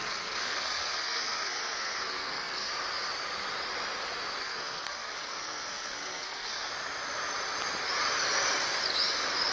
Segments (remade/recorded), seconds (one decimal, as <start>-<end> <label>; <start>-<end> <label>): 0.0-2.7 remade; 2.7-4.4 recorded; 4.4-6.7 remade; 6.7-9.5 recorded